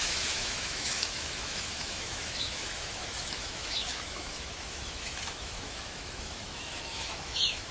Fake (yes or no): yes